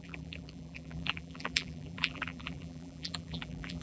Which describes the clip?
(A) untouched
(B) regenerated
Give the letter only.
B